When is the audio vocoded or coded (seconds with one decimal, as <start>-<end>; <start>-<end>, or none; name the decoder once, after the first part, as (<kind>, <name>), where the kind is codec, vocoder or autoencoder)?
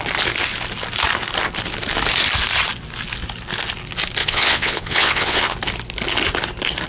4.2-5.4 (vocoder, WaveNeXt)